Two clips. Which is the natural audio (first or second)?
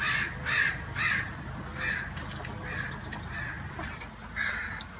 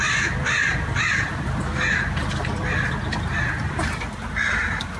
first